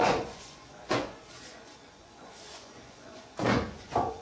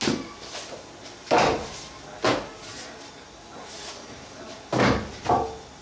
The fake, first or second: first